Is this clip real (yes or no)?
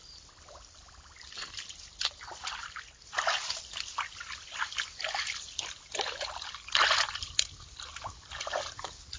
yes